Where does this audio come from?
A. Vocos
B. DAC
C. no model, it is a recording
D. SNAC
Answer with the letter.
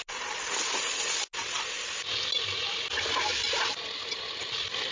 C